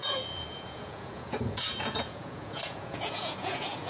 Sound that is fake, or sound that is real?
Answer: fake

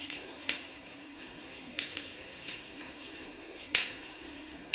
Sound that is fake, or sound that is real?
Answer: fake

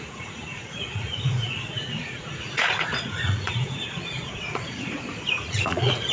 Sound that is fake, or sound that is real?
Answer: fake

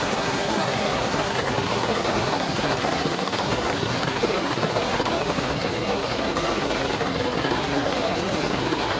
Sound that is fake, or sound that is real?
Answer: fake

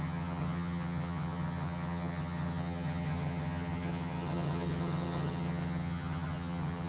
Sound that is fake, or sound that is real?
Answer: fake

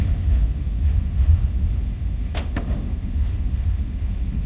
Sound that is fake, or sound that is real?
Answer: fake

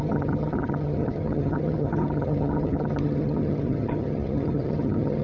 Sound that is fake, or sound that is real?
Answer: fake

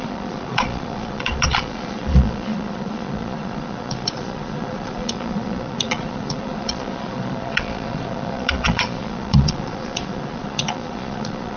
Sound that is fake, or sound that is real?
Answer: fake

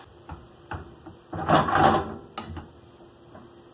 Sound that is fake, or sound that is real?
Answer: real